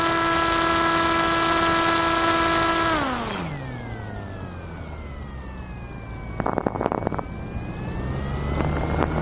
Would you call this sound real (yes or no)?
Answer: yes